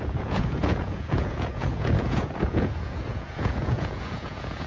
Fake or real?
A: fake